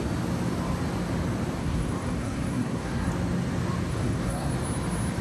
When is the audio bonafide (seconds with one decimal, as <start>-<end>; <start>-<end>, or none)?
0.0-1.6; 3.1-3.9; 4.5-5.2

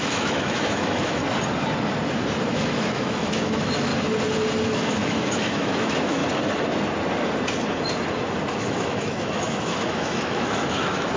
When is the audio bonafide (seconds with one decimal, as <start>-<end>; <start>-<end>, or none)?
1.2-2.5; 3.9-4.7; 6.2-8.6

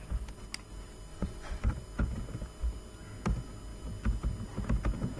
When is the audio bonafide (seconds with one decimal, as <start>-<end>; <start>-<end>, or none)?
0.0-1.1; 1.7-5.2

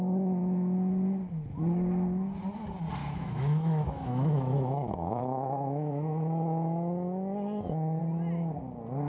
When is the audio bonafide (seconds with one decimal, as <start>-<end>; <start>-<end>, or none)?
0.0-3.0; 8.0-9.1

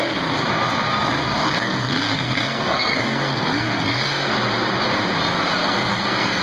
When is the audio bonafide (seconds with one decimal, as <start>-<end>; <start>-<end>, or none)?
0.0-1.4; 4.3-5.6

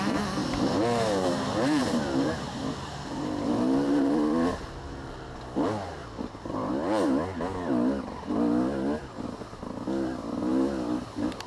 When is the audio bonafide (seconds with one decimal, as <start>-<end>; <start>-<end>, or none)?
0.0-0.4; 4.1-6.0; 6.7-11.5

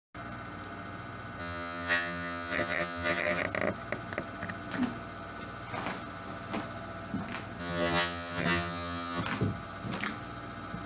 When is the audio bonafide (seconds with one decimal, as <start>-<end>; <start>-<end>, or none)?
0.0-1.4; 3.4-7.6; 9.2-10.9

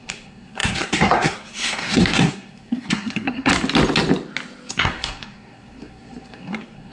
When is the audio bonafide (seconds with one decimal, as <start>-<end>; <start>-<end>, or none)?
3.5-4.7